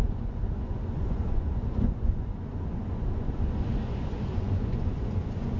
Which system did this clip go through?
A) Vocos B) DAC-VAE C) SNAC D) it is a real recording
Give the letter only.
A